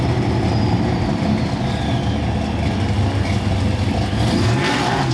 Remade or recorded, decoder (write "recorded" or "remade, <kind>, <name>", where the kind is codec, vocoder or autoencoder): recorded